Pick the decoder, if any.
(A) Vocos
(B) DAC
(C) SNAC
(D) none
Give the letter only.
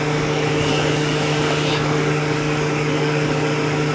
B